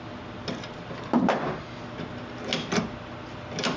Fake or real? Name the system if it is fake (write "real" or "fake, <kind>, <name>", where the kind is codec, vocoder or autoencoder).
real